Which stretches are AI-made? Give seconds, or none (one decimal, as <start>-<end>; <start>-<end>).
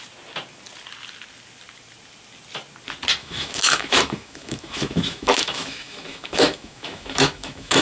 3.2-7.8